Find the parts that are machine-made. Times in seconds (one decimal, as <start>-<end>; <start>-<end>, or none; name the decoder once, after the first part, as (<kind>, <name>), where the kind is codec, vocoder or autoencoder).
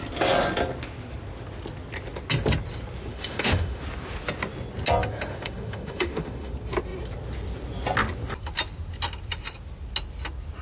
3.1-3.8 (autoencoder, DAC-VAE); 5.3-6.5